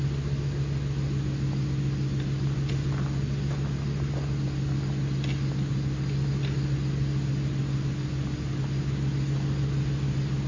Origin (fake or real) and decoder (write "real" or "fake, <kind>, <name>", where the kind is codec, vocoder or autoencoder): real